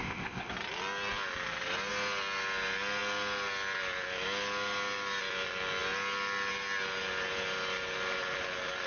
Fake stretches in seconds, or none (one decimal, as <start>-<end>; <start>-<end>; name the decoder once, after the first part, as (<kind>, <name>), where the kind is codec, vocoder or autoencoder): 0.0-0.5 (codec, ZipCodec)